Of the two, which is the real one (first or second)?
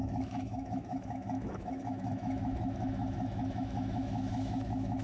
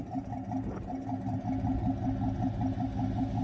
second